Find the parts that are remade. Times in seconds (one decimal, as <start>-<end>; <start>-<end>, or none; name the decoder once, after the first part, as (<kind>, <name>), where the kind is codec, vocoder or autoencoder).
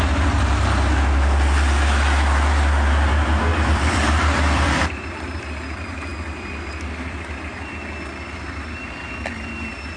3.5-5.4 (vocoder, BigVGAN v2); 6.1-7.2